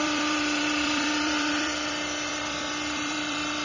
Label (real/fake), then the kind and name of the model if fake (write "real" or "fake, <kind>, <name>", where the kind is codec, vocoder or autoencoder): fake, vocoder, BigVGAN v2